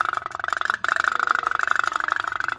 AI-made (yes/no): yes